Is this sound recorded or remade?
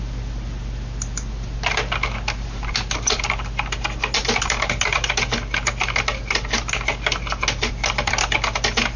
recorded